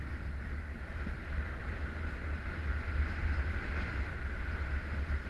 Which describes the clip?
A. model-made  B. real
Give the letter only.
B